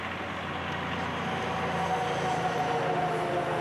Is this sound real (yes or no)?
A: yes